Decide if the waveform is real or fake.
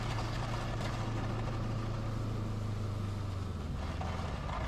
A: real